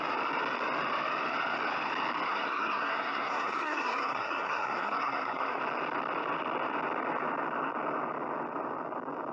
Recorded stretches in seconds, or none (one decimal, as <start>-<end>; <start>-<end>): 0.0-2.3; 5.6-9.3